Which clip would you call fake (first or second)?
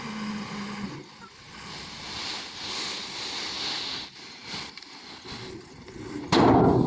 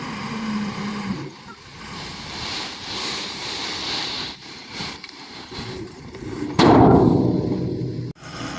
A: second